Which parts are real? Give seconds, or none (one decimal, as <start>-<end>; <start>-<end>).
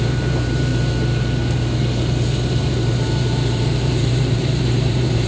0.7-2.5